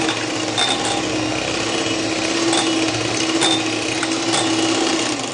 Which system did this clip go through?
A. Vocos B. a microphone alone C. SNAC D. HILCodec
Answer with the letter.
B